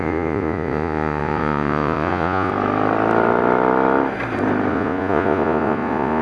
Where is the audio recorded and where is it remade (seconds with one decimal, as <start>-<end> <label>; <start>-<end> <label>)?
0.0-2.5 remade; 2.5-4.7 recorded; 4.7-6.2 remade

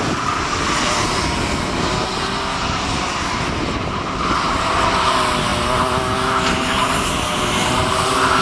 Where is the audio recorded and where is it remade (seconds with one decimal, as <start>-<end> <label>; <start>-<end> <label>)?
0.0-8.4 recorded

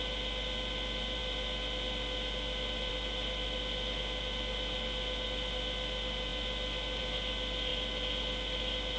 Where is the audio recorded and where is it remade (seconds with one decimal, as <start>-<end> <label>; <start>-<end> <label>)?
0.0-9.0 recorded

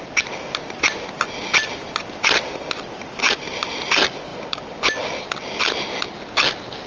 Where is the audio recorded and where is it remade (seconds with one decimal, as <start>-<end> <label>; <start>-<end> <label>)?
0.0-6.9 recorded

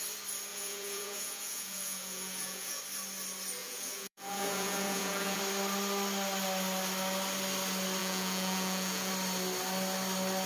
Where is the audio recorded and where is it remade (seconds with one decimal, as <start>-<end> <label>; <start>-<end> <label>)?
0.0-0.5 recorded; 0.5-2.8 remade; 2.8-3.6 recorded; 3.6-5.4 remade; 5.4-8.0 recorded; 8.0-9.1 remade; 9.1-10.5 recorded